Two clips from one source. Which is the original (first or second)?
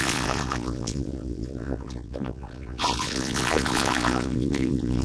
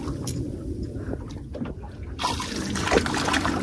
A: second